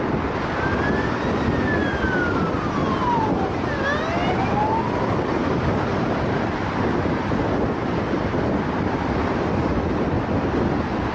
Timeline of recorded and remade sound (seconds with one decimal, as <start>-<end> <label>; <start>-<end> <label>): 0.0-2.8 recorded; 2.8-3.5 remade; 3.5-5.4 recorded; 5.4-7.5 remade; 7.5-11.1 recorded